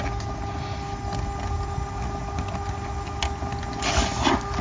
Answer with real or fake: real